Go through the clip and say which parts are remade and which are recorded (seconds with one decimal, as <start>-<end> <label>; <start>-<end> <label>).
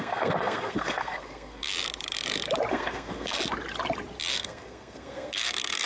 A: 0.0-1.7 remade; 1.7-2.7 recorded; 2.7-3.4 remade; 3.4-4.3 recorded; 4.3-5.9 remade